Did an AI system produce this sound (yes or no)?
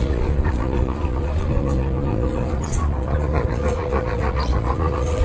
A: yes